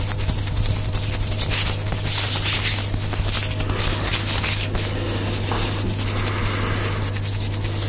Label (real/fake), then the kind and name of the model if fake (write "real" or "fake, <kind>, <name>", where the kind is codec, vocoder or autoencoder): real